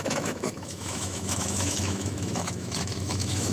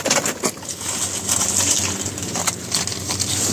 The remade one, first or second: first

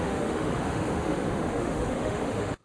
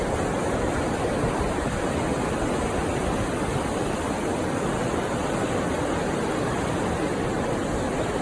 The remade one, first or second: first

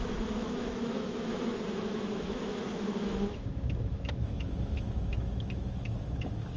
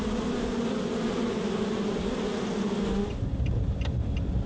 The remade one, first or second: first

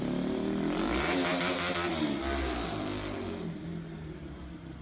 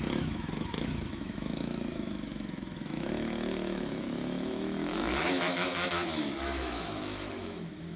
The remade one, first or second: second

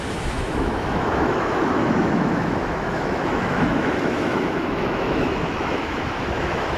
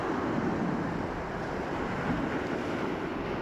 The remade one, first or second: first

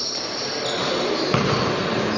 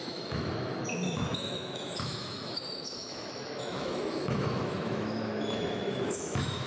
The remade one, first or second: second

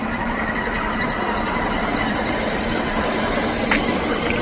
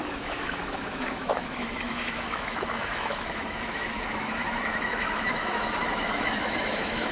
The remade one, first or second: second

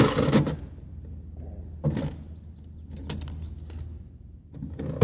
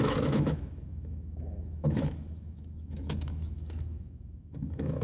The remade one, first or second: second